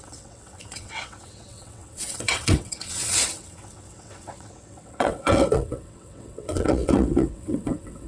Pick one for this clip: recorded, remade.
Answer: remade